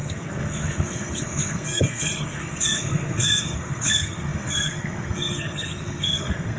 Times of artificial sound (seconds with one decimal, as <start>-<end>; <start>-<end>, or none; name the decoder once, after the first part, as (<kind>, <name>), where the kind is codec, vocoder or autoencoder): 0.0-6.6 (codec, SNAC)